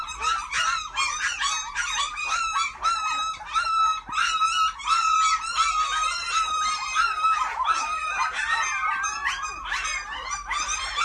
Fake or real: fake